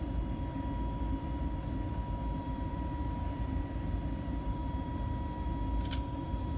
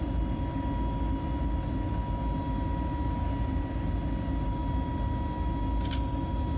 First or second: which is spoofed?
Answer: first